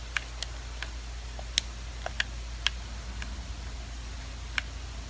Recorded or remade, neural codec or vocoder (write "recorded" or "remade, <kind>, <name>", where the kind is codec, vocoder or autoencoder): recorded